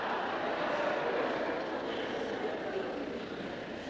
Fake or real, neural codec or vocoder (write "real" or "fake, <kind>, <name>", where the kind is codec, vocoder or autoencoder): real